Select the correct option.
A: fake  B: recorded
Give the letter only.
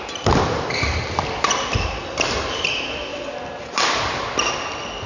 B